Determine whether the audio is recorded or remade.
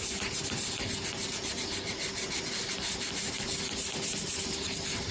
recorded